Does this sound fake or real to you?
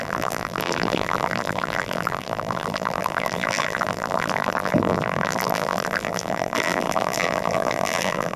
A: fake